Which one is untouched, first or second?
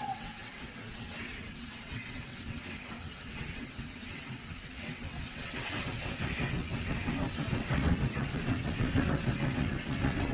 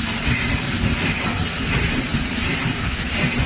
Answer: second